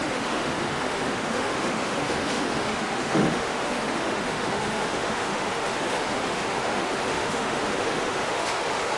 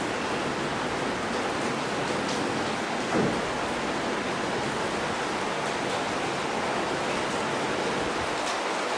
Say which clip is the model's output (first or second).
first